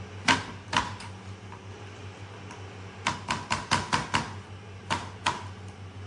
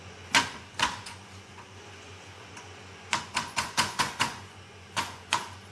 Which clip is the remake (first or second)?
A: second